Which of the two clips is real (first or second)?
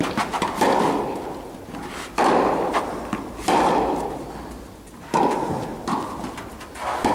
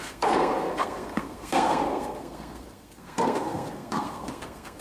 first